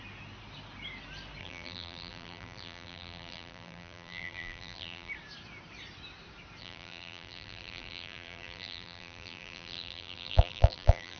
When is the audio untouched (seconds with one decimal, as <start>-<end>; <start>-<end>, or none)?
0.0-1.4; 5.1-6.6

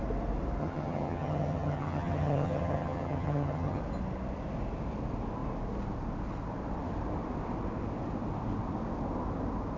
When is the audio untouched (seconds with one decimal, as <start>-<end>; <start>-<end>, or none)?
0.0-0.6; 3.8-9.8

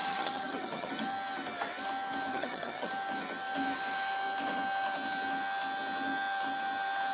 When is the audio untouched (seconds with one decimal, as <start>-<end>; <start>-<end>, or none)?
0.9-2.3; 2.9-7.1

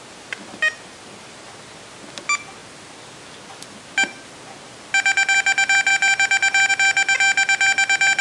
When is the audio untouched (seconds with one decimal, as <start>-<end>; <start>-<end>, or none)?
0.0-8.2

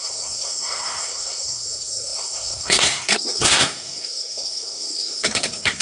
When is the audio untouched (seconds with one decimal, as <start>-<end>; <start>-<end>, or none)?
none